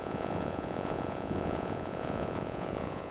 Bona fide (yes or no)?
no